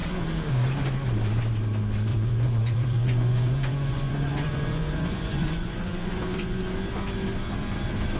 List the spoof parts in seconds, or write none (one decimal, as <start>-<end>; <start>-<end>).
2.1-6.6